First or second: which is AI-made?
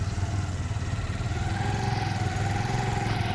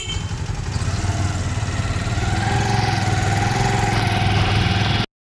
first